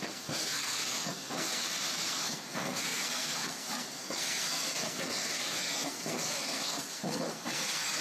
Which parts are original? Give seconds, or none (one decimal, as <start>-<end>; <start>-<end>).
none